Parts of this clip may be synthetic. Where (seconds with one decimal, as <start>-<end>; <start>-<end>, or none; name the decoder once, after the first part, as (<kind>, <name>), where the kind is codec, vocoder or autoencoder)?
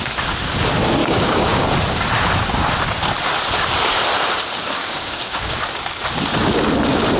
1.0-1.7 (codec, DAC); 4.8-5.6